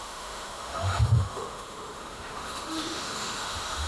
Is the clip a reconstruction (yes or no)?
yes